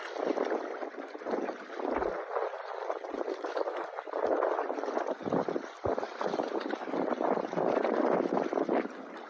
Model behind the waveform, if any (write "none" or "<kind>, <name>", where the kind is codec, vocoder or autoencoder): none